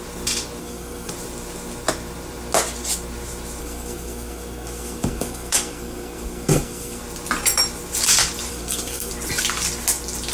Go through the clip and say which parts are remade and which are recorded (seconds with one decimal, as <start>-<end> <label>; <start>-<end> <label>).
0.0-0.6 recorded; 0.6-1.1 remade; 1.1-3.6 recorded; 3.6-7.0 remade; 7.0-8.5 recorded; 8.5-9.1 remade; 9.1-10.3 recorded